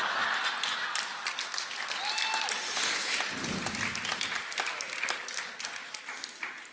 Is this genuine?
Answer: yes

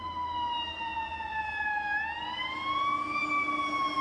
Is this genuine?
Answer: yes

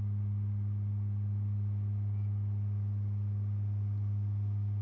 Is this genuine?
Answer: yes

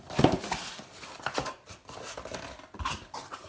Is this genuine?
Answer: yes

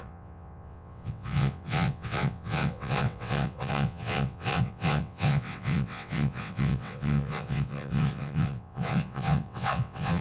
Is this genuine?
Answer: no